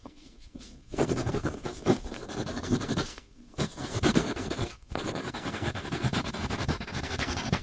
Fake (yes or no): yes